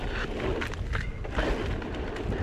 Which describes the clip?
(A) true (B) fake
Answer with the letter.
A